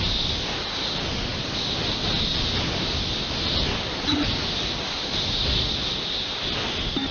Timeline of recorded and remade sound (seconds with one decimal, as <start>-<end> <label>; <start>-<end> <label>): 0.0-7.1 recorded